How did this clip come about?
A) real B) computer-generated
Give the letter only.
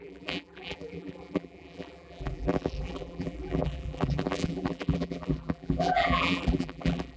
B